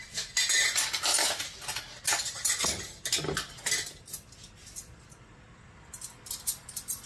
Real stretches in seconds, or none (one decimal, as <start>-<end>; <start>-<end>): 0.0-7.1